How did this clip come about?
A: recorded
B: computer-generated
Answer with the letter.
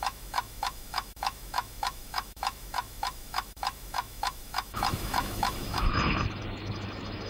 B